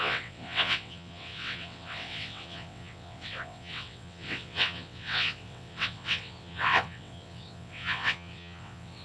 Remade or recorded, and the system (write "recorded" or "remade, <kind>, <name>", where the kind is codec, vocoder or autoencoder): remade, vocoder, WaveNeXt